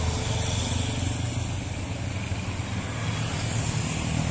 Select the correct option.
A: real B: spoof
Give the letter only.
A